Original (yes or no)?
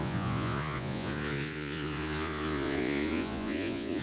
no